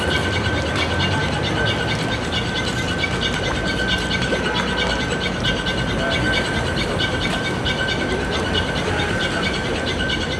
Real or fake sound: real